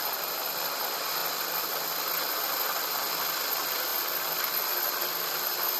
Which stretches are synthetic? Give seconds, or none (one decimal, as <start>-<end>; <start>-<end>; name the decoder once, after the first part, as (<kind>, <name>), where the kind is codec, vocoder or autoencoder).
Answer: none